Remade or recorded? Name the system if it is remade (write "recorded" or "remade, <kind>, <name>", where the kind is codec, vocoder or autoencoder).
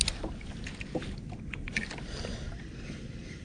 recorded